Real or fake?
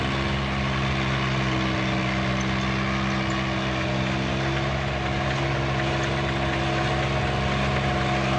real